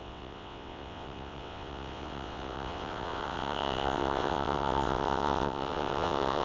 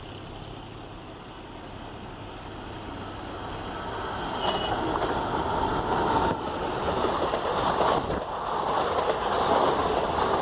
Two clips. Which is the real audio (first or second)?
second